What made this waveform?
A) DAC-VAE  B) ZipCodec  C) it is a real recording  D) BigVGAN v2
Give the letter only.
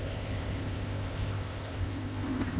B